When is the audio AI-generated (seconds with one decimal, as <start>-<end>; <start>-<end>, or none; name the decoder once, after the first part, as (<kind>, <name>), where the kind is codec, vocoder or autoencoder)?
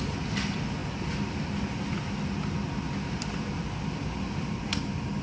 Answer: none